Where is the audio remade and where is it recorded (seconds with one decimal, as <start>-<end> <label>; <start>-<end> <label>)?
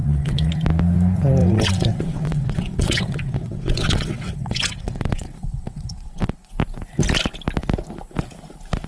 0.0-0.5 remade; 0.5-1.4 recorded; 1.4-6.5 remade; 6.5-8.9 recorded